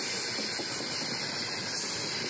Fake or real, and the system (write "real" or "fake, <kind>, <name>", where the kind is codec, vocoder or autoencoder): real